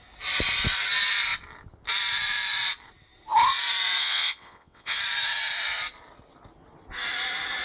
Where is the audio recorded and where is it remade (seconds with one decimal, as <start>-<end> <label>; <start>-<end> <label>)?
0.0-4.0 recorded; 4.0-5.0 remade; 5.0-7.6 recorded